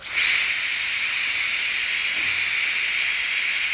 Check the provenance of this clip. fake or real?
real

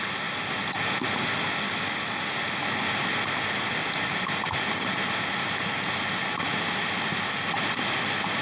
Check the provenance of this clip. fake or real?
real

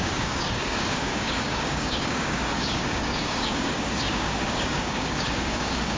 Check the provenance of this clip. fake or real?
fake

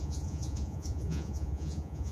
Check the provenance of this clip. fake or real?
fake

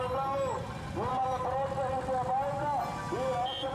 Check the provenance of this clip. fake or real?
real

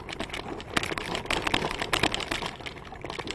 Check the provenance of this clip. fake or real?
real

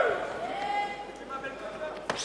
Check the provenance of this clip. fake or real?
real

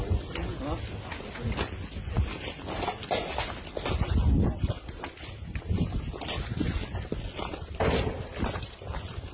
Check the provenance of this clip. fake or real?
real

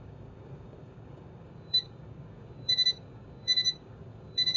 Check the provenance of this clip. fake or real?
fake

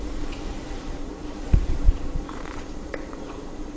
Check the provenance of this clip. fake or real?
fake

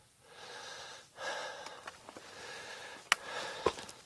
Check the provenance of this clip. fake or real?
real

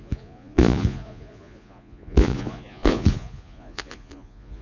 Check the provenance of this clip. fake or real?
fake